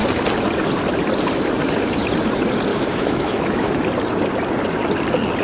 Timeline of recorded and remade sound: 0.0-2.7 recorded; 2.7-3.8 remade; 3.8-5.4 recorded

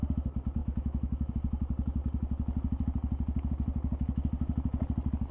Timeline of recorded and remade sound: 0.0-0.6 recorded; 0.6-1.3 remade; 1.3-5.3 recorded

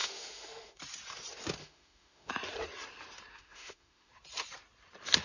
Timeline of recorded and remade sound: 0.0-0.8 remade; 0.8-1.6 recorded; 1.6-2.3 remade; 2.3-3.3 recorded; 3.3-4.1 remade; 4.1-5.2 recorded